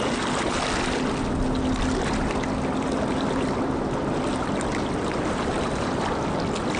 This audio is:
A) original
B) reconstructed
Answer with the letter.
A